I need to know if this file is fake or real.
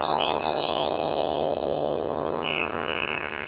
fake